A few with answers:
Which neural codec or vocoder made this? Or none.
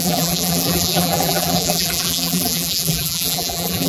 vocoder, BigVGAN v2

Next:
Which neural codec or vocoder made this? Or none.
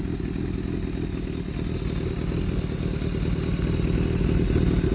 none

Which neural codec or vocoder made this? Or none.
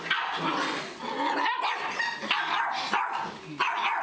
none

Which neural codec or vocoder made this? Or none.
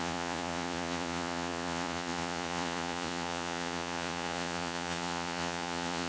vocoder, Vocos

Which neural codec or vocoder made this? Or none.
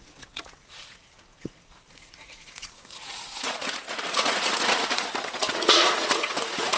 vocoder, Vocos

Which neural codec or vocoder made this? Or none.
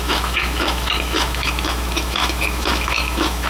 autoencoder, DAC-VAE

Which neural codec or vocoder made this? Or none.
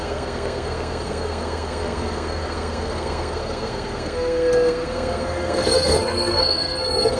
codec, SNAC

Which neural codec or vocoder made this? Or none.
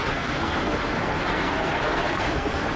codec, SNAC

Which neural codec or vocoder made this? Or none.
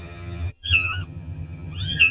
vocoder, HiFi-GAN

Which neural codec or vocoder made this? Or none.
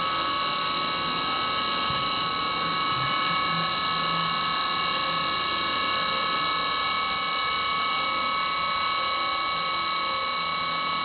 none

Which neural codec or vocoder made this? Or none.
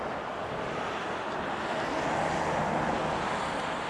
none